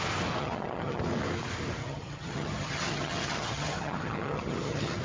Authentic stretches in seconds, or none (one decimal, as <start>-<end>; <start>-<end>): 0.0-0.4; 1.0-1.8

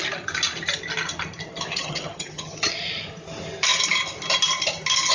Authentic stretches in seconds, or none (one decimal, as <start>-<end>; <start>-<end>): 0.0-1.7; 2.7-5.1